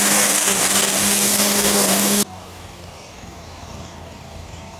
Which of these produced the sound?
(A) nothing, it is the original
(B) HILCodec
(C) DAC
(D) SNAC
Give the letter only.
C